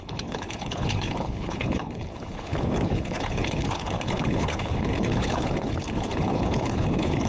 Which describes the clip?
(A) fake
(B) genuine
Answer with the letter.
A